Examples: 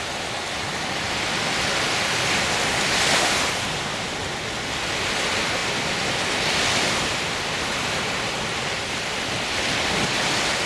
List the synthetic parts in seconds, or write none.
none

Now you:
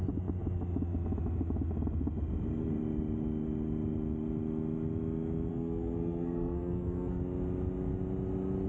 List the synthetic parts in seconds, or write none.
5.5-7.2 (codec, SNAC)

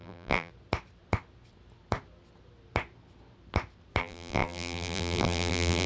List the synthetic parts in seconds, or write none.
0.0-0.5 (vocoder, BigVGAN v2); 4.0-5.9

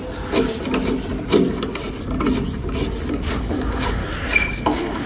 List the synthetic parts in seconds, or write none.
3.1-4.0 (codec, DAC); 4.5-5.1

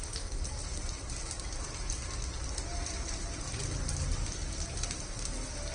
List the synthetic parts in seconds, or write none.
0.6-2.0 (vocoder, BigVGAN v2); 2.7-3.6; 4.1-5.1

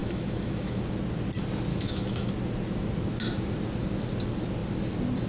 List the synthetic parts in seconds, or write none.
0.0-0.8 (autoencoder, DAC-VAE); 1.7-2.3